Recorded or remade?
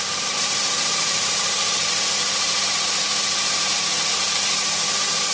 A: recorded